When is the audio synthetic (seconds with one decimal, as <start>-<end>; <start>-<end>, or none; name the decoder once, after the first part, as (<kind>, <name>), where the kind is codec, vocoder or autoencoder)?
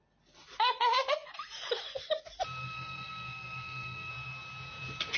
2.6-4.1 (codec, SNAC)